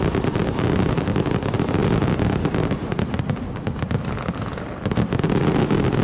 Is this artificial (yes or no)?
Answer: no